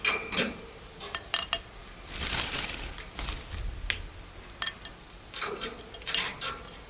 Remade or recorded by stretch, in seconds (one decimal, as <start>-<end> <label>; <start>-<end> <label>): 0.0-6.9 recorded